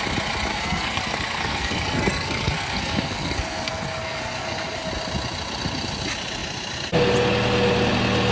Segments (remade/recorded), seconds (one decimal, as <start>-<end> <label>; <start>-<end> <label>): 0.0-0.5 recorded; 0.5-4.9 remade; 4.9-8.3 recorded